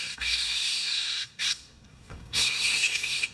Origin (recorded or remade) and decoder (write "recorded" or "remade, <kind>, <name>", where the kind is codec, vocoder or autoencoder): remade, codec, SNAC